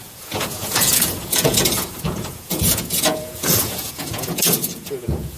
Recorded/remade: remade